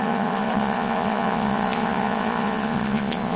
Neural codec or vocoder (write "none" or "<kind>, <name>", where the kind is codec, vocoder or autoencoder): vocoder, Vocos